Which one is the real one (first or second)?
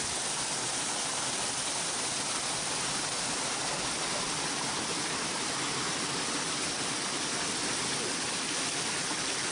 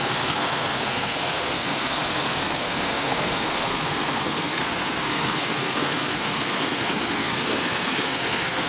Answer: first